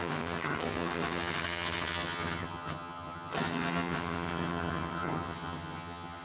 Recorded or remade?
remade